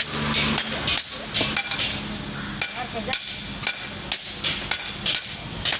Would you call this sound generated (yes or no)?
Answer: no